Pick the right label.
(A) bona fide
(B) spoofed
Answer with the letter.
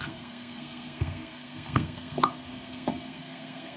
B